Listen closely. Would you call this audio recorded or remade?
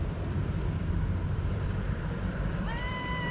remade